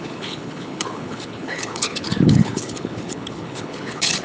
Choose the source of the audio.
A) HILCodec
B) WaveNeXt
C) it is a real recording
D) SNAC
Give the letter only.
A